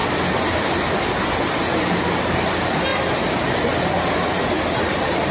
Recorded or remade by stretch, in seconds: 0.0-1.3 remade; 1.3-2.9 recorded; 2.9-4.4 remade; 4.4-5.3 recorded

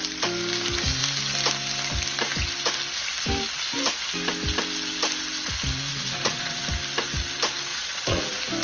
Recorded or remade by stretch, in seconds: 0.0-5.9 recorded; 5.9-6.6 remade; 6.6-7.7 recorded; 7.7-8.2 remade; 8.2-8.6 recorded

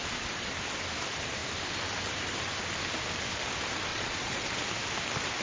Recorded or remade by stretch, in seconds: 0.0-0.5 remade; 0.5-3.9 recorded; 3.9-4.5 remade; 4.5-5.4 recorded